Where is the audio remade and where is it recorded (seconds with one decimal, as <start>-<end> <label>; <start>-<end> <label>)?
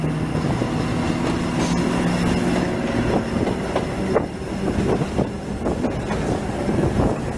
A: 0.0-7.4 recorded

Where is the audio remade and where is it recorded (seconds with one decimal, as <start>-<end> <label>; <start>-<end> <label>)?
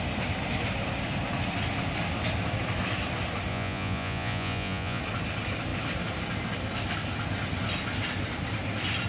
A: 0.0-3.5 recorded; 3.5-5.0 remade; 5.0-9.1 recorded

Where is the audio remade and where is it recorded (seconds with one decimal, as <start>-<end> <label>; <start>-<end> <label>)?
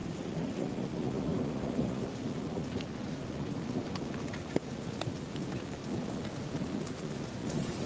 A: 0.0-7.9 remade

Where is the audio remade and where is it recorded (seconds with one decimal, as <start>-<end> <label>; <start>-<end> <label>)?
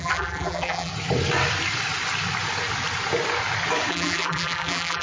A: 0.0-0.9 remade; 0.9-3.9 recorded; 3.9-5.0 remade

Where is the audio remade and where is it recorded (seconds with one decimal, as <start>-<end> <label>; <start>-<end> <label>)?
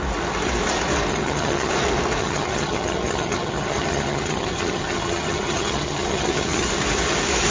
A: 0.0-1.1 recorded; 1.1-1.7 remade; 1.7-2.2 recorded; 2.2-6.7 remade; 6.7-7.5 recorded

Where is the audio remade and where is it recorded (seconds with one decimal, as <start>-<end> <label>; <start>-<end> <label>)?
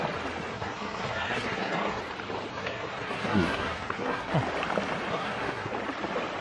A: 0.0-0.5 recorded; 0.5-2.0 remade; 2.0-2.5 recorded; 2.5-4.3 remade; 4.3-5.1 recorded; 5.1-5.7 remade; 5.7-6.4 recorded